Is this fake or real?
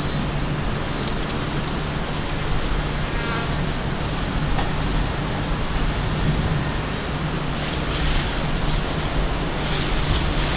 real